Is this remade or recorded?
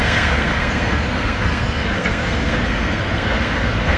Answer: remade